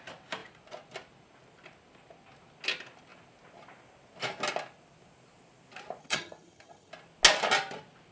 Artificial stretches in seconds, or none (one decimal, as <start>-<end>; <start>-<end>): 6.0-6.9